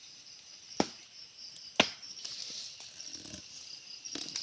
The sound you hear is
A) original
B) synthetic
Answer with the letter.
A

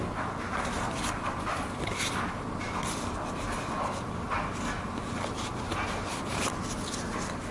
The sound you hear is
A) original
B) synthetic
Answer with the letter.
A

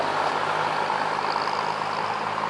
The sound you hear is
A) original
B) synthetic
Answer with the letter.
A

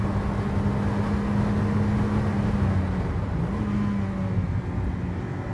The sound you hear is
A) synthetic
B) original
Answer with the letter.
B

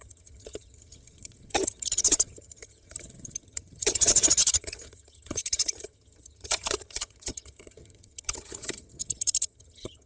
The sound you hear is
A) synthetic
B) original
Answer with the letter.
A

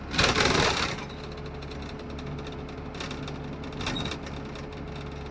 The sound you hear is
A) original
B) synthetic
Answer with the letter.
A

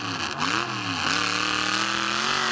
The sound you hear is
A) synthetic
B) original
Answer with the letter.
B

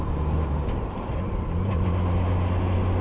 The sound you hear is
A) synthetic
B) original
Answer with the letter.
B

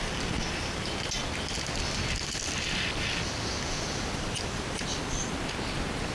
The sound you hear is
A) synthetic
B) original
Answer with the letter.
B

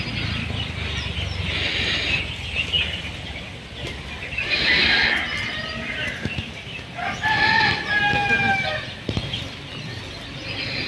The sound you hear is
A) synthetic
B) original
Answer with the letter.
B